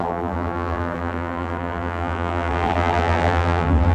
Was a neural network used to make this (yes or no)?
yes